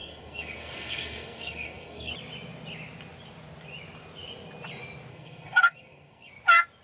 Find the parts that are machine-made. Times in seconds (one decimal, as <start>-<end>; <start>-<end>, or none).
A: 0.0-2.1; 5.1-6.3